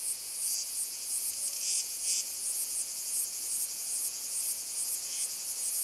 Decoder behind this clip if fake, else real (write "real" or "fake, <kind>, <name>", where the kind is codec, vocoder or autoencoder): fake, vocoder, Vocos